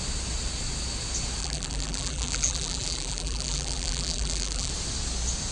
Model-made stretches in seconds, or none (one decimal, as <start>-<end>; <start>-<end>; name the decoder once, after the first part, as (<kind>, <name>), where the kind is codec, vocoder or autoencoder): 1.4-4.7 (vocoder, BigVGAN v2)